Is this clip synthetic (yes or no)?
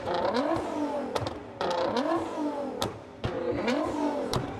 yes